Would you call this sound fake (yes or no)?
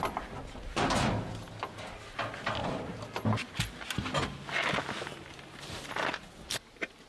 no